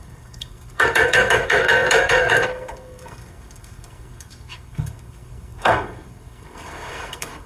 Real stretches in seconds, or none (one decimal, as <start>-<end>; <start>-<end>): none